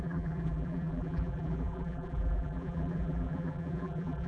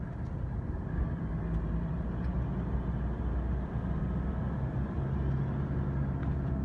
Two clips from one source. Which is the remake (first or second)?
first